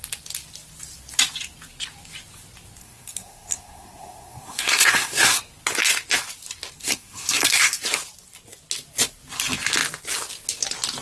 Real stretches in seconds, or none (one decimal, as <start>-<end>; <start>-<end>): 0.0-2.8; 5.4-6.8; 7.8-11.0